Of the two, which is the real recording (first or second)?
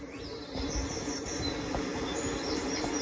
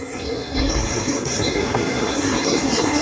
first